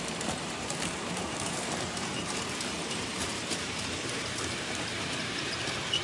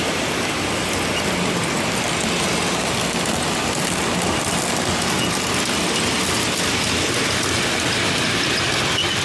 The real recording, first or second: second